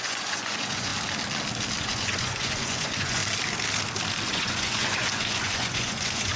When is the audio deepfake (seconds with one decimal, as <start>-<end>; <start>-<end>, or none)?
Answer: 0.0-0.9; 1.8-3.2; 4.3-6.4